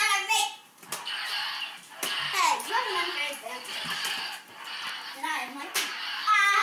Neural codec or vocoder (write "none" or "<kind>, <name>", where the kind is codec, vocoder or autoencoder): vocoder, BigVGAN v2